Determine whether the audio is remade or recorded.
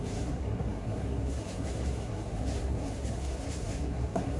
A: remade